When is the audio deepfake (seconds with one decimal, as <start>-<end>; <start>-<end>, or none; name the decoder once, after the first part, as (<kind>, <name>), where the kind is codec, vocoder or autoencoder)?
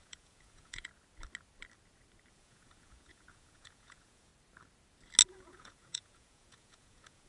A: 0.0-0.9 (vocoder, Vocos); 2.3-4.3; 5.3-7.3